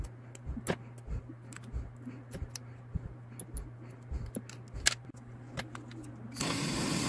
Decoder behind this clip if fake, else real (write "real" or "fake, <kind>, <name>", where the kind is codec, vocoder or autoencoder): real